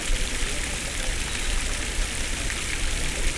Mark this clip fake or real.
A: real